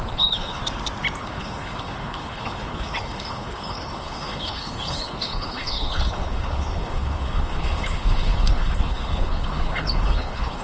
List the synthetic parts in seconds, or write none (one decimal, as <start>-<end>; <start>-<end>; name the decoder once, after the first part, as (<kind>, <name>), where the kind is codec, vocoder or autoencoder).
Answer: 0.0-0.6 (codec, HILCodec); 1.2-10.6